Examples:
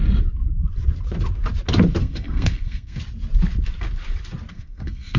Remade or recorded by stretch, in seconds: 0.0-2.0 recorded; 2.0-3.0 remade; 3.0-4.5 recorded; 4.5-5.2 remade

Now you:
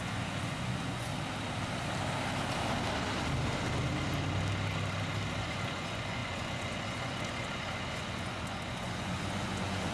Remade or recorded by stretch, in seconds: 0.0-1.1 remade; 1.1-5.4 recorded; 5.4-9.9 remade

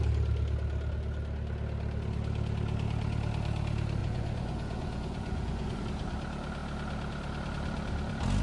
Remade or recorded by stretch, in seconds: 0.0-4.0 recorded; 4.0-5.8 remade; 5.8-8.4 recorded

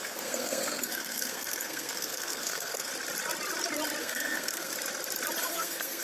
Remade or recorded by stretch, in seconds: 0.0-2.9 remade; 2.9-4.0 recorded; 4.0-4.7 remade; 4.7-5.4 recorded; 5.4-6.0 remade